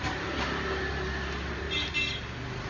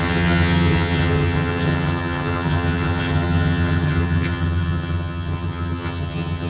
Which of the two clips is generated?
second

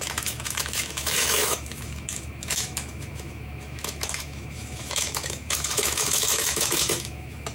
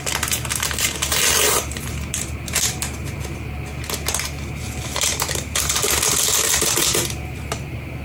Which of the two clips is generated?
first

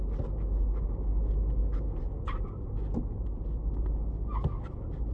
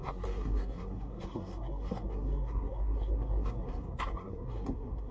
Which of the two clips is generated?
second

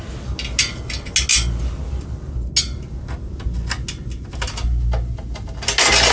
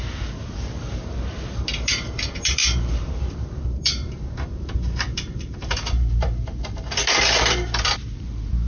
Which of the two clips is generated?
second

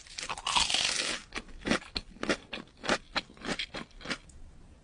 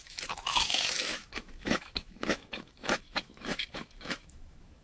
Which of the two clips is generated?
second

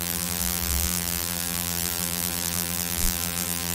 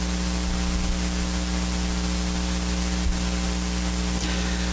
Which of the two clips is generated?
first